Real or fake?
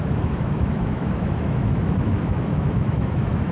fake